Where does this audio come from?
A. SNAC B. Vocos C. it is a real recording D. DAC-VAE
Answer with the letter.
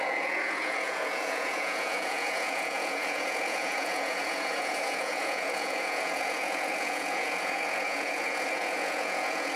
B